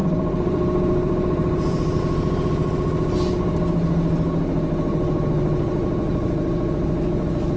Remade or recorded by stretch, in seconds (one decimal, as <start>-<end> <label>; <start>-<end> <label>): 0.0-2.0 remade; 2.0-6.0 recorded; 6.0-6.7 remade; 6.7-7.6 recorded